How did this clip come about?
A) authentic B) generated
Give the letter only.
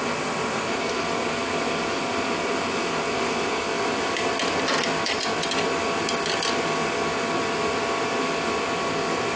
A